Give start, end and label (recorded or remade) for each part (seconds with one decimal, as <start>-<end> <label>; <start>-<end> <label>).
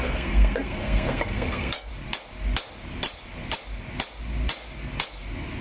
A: 0.0-1.9 remade; 1.9-5.6 recorded